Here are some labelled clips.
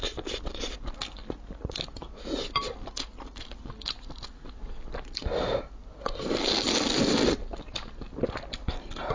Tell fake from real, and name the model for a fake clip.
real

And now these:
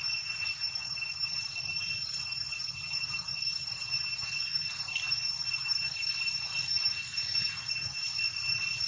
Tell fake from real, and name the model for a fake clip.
real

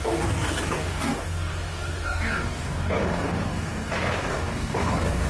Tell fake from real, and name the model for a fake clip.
fake, codec, DAC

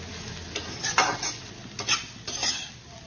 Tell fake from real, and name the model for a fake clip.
real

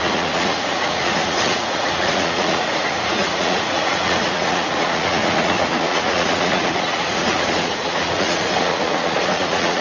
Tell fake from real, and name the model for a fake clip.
fake, vocoder, Vocos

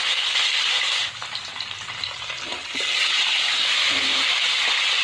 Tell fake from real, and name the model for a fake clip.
fake, vocoder, BigVGAN v2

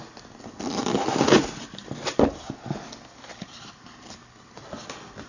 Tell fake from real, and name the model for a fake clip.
real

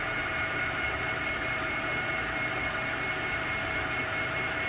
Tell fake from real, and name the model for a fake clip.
fake, vocoder, BigVGAN v2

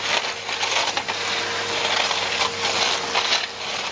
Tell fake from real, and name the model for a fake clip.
real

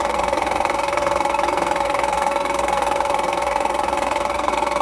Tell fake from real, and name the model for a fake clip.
fake, codec, SNAC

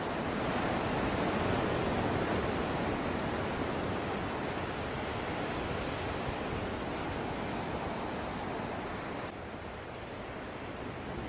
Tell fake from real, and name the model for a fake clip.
fake, vocoder, BigVGAN v2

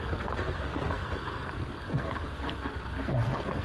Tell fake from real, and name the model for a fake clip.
fake, codec, SNAC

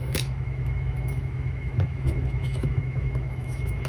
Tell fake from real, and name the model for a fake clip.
fake, autoencoder, DAC-VAE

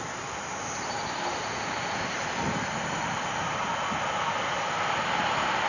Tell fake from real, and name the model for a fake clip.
real